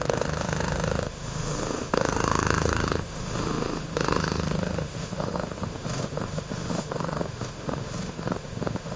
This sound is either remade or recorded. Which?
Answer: remade